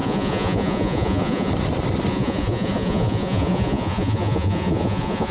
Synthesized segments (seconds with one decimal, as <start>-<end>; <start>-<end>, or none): 0.0-1.5; 2.1-5.3